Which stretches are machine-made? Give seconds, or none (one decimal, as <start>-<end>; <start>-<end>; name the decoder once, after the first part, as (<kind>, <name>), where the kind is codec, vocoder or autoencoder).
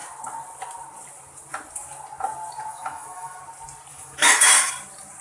2.7-3.4 (autoencoder, DAC-VAE); 3.9-4.7